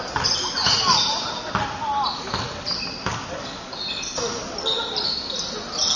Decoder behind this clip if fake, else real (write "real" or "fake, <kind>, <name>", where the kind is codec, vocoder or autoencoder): real